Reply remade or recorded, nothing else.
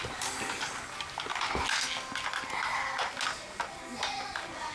recorded